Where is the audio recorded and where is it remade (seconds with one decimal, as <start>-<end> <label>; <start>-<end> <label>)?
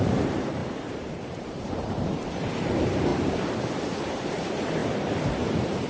0.0-5.9 remade